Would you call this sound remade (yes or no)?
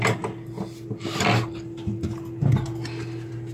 no